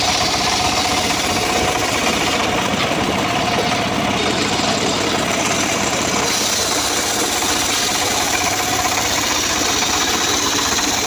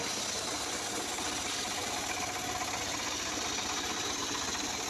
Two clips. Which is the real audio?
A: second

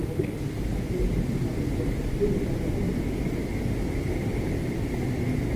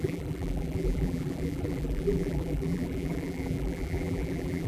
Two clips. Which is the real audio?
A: first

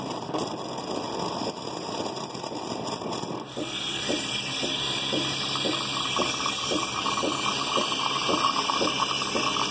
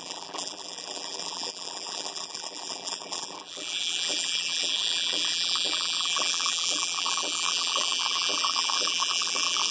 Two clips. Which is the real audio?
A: first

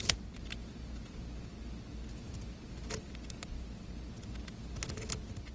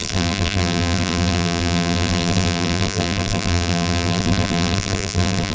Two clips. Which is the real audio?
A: first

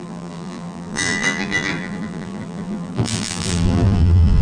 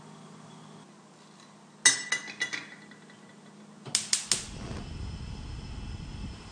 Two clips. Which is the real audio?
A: second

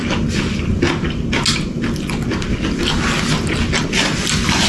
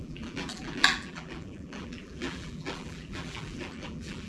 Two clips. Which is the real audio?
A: first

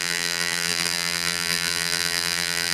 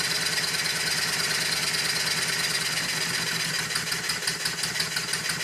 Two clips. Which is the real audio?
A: second